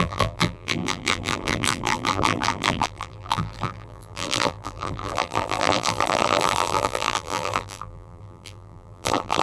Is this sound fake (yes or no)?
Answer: yes